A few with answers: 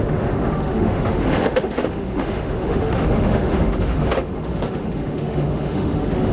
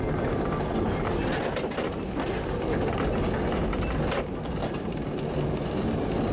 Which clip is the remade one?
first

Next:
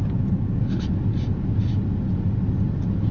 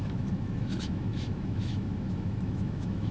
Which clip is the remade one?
second